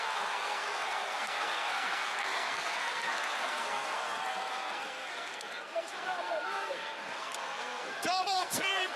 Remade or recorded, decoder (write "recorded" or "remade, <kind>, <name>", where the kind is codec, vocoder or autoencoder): remade, codec, SNAC